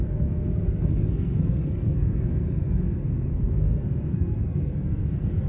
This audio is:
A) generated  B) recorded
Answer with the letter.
A